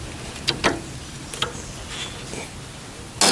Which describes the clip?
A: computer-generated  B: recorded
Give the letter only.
B